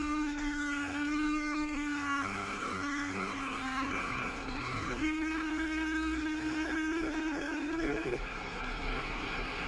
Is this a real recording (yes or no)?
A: no